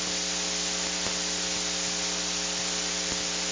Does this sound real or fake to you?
real